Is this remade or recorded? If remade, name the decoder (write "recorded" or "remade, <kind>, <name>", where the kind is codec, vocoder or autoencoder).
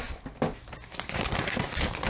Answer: recorded